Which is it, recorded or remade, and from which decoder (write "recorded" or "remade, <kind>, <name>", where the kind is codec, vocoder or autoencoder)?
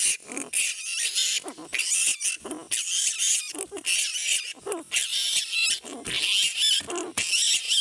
recorded